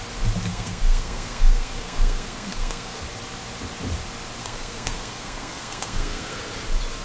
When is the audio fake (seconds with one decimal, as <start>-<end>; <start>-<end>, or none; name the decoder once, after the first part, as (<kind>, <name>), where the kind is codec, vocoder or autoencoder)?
0.5-3.0 (codec, SNAC); 4.4-6.4